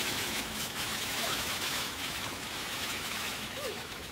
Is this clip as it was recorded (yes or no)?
no